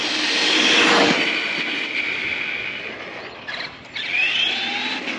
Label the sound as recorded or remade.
recorded